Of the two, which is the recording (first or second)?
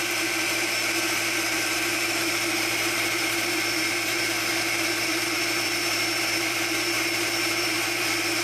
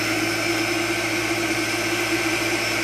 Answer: second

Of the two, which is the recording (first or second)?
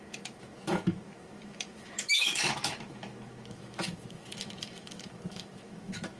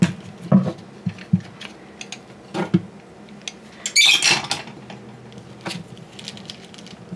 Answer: second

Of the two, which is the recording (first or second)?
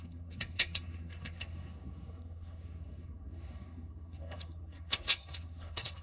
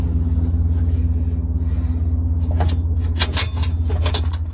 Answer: second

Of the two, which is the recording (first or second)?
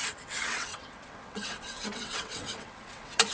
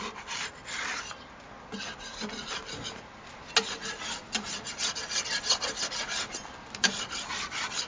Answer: second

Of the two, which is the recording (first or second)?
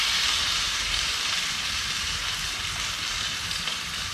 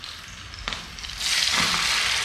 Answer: second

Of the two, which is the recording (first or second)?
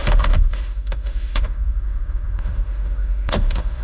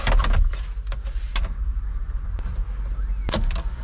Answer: second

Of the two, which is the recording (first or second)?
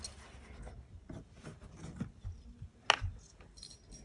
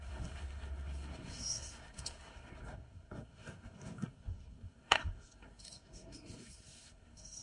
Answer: first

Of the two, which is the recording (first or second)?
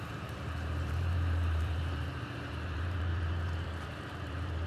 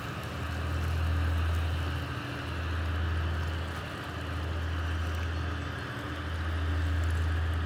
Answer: second